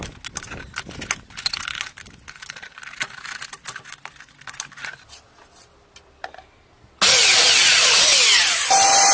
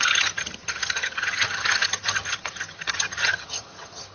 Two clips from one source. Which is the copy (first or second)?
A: second